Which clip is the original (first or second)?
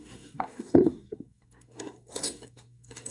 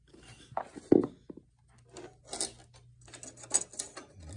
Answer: second